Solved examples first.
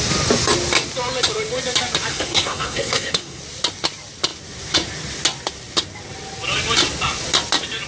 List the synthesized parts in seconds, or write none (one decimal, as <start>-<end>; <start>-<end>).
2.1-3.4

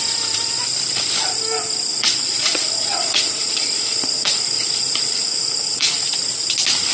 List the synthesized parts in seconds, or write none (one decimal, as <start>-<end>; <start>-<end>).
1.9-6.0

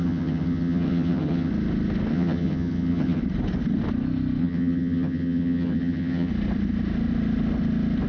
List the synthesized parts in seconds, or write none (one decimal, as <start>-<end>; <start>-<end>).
0.0-1.5; 2.1-3.2; 4.4-6.3

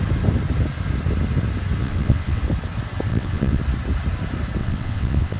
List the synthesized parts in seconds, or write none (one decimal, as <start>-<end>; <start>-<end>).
1.8-2.4; 3.1-3.6; 4.6-5.4